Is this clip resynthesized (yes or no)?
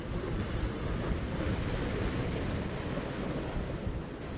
no